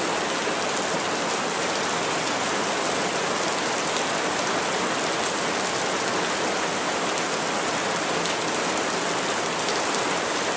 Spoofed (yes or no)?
no